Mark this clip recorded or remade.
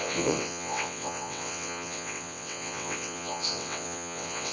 remade